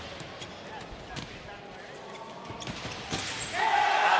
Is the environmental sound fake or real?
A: real